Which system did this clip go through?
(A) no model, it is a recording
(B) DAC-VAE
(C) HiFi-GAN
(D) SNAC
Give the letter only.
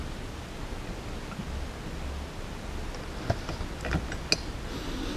A